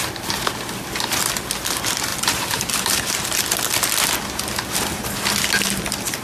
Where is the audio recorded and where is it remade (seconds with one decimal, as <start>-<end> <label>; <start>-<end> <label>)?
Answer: 0.0-2.1 recorded; 2.1-3.4 remade; 3.4-6.2 recorded